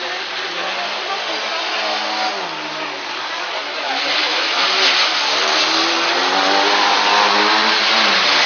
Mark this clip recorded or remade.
recorded